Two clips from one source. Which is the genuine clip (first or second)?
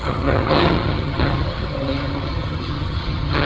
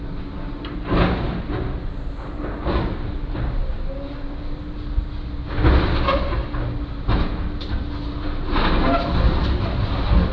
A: second